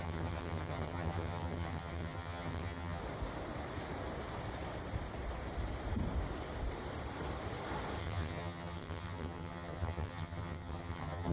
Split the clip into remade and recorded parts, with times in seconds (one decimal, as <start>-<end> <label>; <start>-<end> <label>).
0.0-3.0 remade; 3.0-8.0 recorded; 8.0-11.3 remade